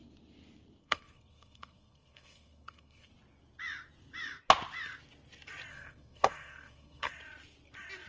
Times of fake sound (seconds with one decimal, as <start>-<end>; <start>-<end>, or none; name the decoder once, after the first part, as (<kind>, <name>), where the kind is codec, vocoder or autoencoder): 0.8-3.1 (codec, SNAC); 5.7-7.1